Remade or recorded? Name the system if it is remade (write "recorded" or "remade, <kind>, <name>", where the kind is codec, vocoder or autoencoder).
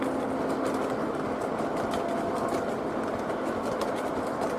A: recorded